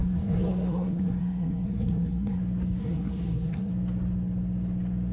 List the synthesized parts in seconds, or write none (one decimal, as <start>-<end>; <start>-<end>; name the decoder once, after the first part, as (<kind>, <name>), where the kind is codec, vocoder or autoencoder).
0.0-2.4 (codec, SNAC); 2.8-3.7

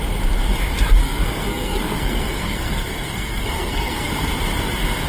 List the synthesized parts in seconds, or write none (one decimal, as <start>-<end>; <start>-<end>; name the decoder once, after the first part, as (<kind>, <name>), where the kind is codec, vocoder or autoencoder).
1.0-4.1 (codec, SNAC)

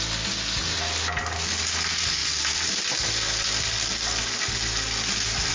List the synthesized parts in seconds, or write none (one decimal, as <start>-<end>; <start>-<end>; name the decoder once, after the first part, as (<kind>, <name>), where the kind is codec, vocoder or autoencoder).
none

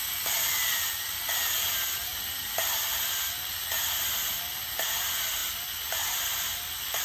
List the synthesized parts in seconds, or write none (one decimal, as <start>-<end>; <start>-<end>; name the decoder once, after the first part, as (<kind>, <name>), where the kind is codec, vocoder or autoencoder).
none

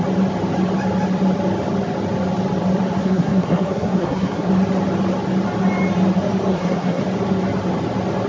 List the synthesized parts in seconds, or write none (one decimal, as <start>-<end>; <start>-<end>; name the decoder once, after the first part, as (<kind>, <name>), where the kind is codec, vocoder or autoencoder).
3.0-4.5 (codec, SNAC); 6.5-7.0